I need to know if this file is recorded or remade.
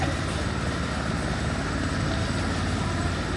recorded